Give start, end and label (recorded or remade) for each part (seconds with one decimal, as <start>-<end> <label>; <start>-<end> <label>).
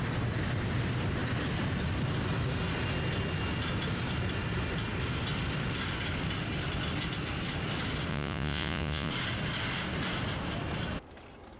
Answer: 0.0-8.1 recorded; 8.1-9.1 remade; 9.1-11.6 recorded